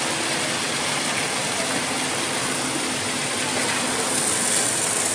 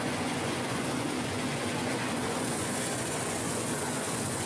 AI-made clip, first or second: second